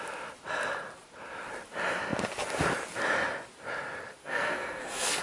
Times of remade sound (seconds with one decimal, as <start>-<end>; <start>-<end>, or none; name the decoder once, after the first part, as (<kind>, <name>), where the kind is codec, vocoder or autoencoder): 4.2-5.2 (codec, SNAC)